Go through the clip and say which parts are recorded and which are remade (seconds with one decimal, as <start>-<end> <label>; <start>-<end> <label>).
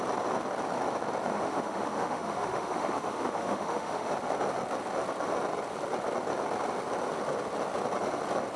0.0-1.3 recorded; 1.3-4.1 remade; 4.1-8.6 recorded